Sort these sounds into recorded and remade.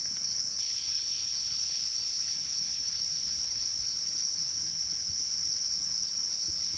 remade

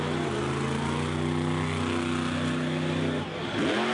recorded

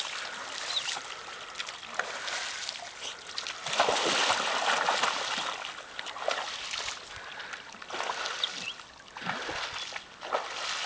recorded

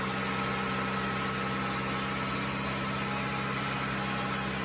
recorded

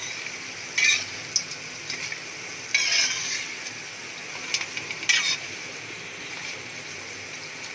recorded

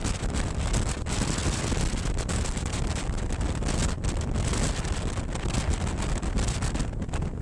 recorded